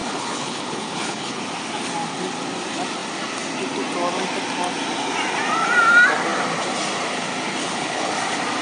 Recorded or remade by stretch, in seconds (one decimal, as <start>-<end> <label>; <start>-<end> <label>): 0.0-1.4 remade; 1.4-7.6 recorded; 7.6-8.1 remade; 8.1-8.6 recorded